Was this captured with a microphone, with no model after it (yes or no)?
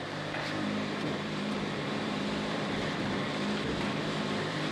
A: no